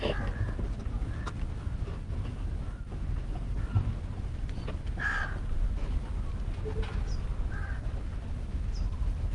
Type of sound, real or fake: real